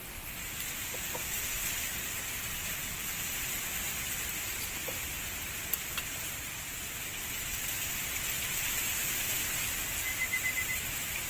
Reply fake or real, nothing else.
real